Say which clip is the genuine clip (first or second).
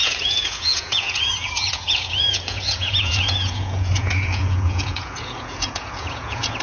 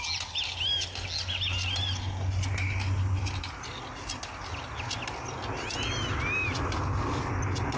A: second